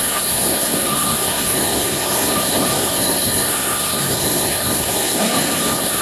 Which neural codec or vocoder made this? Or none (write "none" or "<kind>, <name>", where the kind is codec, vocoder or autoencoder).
codec, SNAC